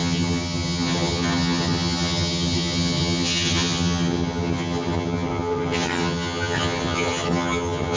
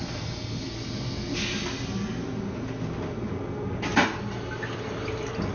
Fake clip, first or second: first